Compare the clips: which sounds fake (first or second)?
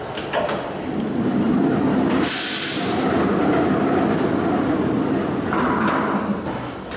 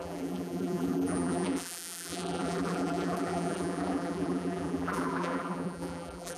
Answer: second